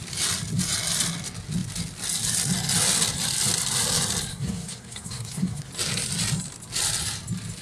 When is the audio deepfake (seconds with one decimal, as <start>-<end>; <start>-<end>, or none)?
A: 4.3-5.7